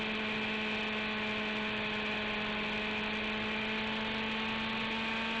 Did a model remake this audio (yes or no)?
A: no